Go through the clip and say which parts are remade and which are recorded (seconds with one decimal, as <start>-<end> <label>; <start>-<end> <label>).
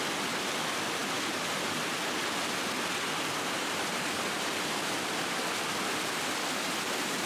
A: 0.0-7.3 recorded